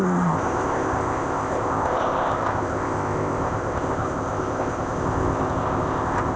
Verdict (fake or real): fake